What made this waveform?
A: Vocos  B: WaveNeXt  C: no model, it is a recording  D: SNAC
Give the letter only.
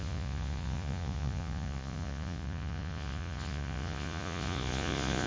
A